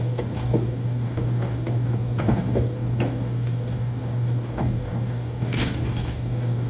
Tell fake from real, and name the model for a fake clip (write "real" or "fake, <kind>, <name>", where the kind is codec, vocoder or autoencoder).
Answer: fake, codec, DAC